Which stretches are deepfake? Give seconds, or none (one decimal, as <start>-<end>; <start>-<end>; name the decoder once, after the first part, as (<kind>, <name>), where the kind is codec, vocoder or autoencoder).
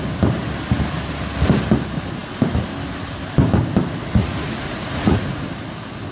4.2-5.4 (vocoder, Vocos)